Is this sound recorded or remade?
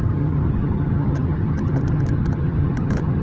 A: remade